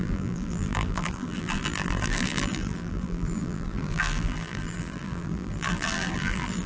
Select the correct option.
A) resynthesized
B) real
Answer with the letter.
A